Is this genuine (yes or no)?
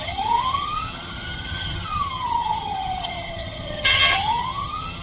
no